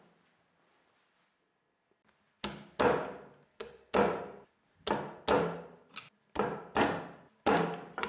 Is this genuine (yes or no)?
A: yes